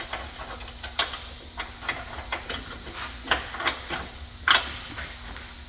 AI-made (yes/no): no